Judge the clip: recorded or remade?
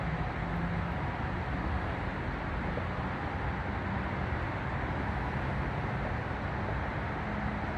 recorded